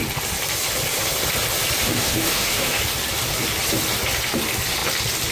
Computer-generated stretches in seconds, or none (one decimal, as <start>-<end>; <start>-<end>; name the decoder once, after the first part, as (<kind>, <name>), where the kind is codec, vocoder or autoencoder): 1.8-2.8 (autoencoder, DAC-VAE)